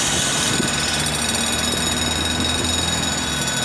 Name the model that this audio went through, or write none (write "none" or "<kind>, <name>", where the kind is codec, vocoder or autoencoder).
none